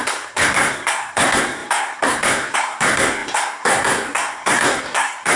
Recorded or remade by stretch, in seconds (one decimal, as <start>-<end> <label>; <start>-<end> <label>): 0.0-5.4 remade